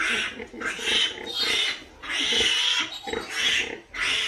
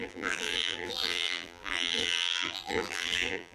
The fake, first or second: second